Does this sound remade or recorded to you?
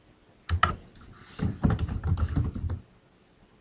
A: recorded